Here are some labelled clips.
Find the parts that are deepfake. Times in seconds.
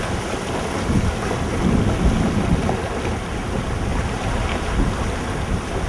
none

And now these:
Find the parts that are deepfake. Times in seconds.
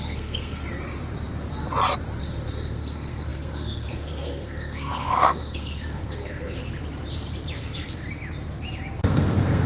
0.0-0.6 (codec, SNAC); 2.2-6.6; 7.6-8.0; 8.9-9.7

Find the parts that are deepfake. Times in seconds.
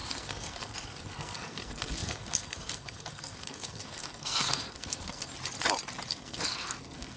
0.0-5.3 (codec, SNAC); 6.1-7.2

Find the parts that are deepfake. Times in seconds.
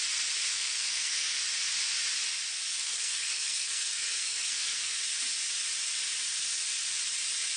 0.5-1.4 (codec, SNAC); 2.7-5.2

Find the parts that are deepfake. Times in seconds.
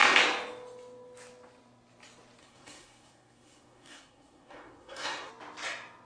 2.4-5.3 (codec, SNAC)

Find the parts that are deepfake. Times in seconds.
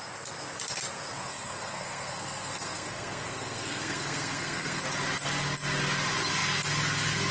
1.2-4.8 (codec, SNAC)